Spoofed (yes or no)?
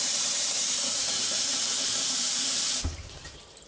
yes